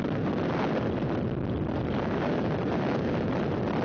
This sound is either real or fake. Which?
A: real